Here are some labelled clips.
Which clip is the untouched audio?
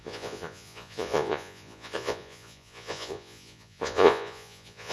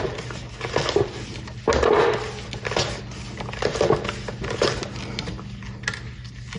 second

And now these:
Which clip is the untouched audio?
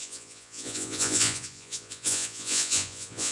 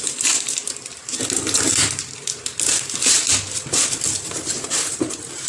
second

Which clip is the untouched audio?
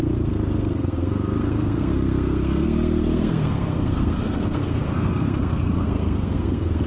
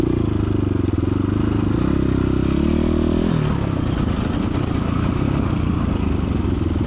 second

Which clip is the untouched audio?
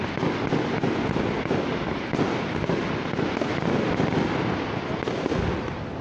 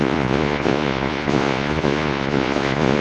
first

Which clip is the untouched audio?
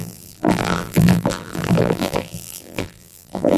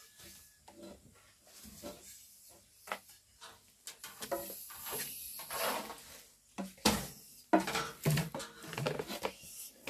second